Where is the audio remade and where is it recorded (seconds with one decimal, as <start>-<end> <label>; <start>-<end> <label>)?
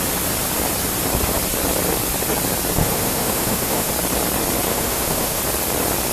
0.0-2.8 recorded; 2.8-3.9 remade; 3.9-4.7 recorded; 4.7-5.4 remade; 5.4-6.1 recorded